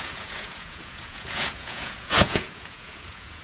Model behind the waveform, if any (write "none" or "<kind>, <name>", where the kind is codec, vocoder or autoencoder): vocoder, Vocos